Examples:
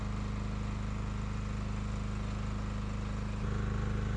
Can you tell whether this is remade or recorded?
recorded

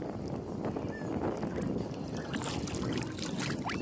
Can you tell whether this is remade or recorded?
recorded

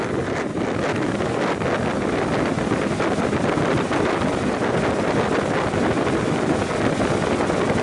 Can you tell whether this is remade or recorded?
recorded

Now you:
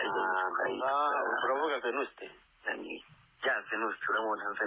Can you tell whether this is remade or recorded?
recorded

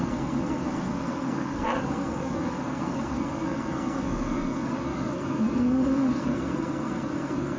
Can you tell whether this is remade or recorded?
remade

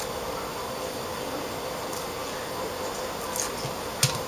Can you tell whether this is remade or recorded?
recorded